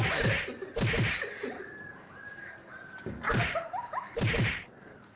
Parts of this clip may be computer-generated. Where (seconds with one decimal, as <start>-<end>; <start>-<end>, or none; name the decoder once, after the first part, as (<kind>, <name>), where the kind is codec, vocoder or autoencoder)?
1.9-5.2 (vocoder, BigVGAN v2)